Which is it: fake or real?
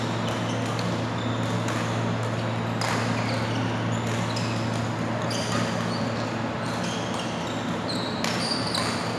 real